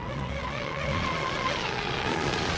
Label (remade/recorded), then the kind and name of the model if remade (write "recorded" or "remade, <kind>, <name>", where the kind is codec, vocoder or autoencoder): remade, vocoder, Vocos